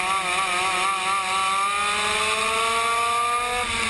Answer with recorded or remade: recorded